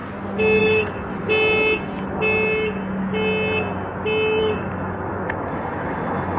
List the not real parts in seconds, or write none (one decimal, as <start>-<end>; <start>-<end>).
0.6-1.1; 4.4-6.4